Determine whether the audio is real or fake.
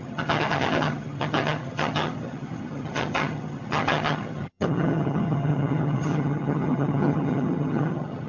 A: fake